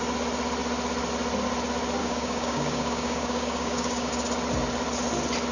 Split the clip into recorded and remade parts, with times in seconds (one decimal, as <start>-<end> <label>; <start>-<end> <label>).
0.0-2.0 recorded; 2.0-4.1 remade; 4.1-5.5 recorded